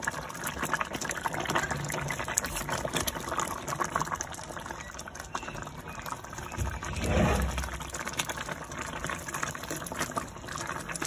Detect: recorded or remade recorded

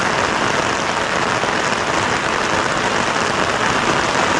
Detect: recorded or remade recorded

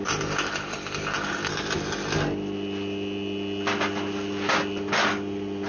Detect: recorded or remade recorded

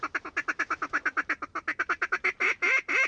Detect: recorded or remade recorded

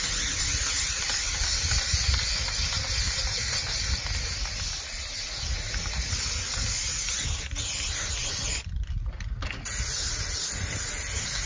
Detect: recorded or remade recorded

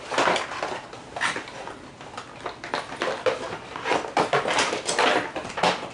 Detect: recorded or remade recorded